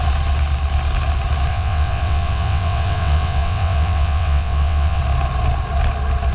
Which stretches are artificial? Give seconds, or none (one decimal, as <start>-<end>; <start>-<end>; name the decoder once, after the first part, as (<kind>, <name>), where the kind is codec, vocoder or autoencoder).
1.5-5.0 (vocoder, WaveNeXt)